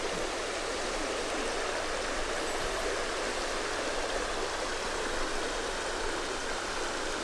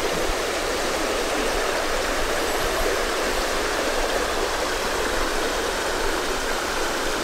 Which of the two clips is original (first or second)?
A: first